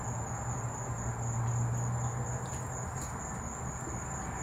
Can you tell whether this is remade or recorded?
recorded